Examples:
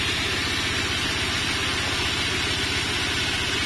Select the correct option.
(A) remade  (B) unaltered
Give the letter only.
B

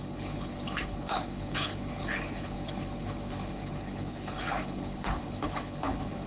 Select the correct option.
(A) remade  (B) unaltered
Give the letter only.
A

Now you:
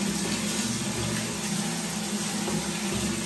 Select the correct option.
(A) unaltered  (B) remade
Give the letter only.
A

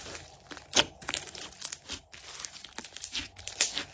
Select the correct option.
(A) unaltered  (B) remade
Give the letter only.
A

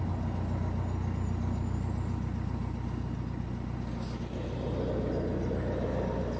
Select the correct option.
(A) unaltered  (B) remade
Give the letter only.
A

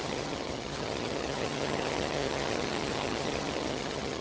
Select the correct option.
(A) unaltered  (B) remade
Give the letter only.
B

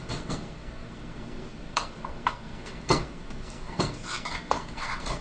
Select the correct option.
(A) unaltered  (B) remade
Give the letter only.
B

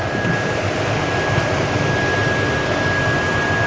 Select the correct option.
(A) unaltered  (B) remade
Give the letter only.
A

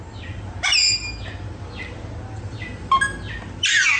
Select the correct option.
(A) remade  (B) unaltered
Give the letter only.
B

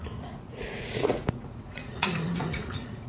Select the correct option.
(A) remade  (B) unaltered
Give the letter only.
A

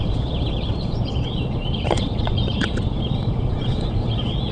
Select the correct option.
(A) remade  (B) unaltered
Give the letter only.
A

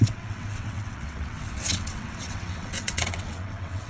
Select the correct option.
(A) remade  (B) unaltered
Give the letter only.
A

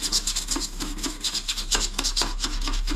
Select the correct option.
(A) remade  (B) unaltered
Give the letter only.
A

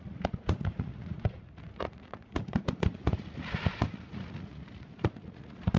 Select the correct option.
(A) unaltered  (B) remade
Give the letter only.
B